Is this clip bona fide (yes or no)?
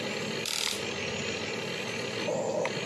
yes